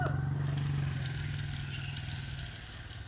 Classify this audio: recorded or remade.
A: recorded